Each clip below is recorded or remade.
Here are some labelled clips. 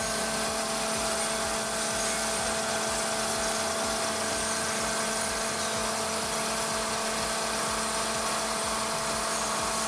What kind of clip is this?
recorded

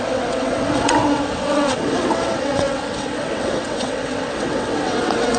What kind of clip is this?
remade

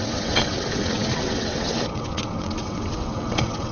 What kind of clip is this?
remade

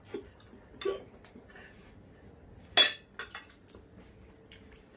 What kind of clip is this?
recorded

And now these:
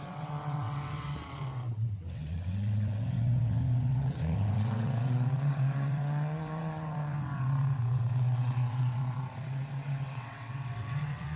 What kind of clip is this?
remade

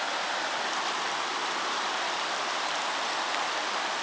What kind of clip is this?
recorded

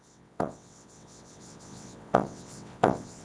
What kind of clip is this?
remade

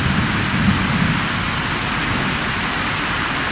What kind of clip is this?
recorded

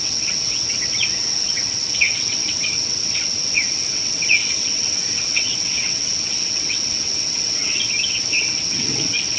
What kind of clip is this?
remade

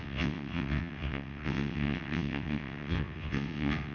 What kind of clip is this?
remade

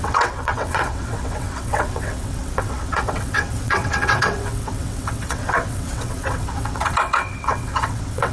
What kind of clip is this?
remade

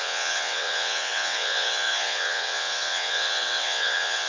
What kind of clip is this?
remade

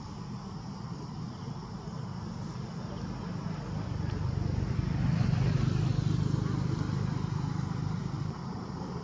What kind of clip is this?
recorded